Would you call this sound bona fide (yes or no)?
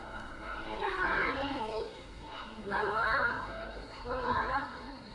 no